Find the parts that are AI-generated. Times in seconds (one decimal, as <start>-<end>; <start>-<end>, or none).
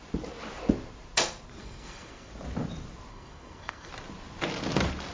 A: 1.6-2.3; 3.1-3.9